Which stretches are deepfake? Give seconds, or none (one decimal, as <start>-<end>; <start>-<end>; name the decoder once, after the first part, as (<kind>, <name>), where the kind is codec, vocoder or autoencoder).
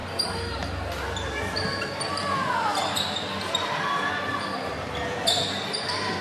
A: none